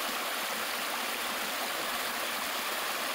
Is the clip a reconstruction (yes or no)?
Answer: no